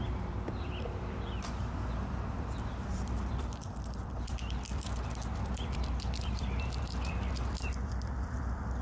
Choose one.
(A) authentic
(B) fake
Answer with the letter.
B